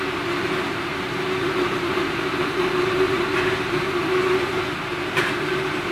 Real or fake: fake